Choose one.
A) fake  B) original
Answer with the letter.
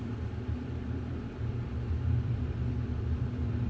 A